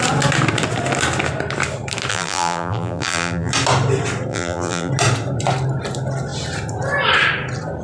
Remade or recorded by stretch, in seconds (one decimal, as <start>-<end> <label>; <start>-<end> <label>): 0.0-2.1 recorded; 2.1-3.5 remade; 3.5-4.3 recorded; 4.3-4.9 remade; 4.9-7.8 recorded